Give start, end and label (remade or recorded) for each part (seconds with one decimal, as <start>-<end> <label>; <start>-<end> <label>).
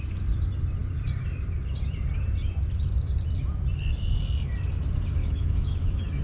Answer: 0.0-5.2 recorded; 5.2-6.2 remade